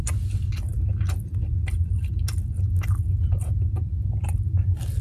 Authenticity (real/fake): real